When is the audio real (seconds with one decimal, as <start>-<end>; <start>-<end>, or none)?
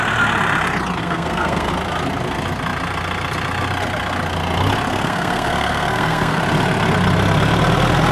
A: 0.0-1.0; 1.7-4.9; 6.4-8.1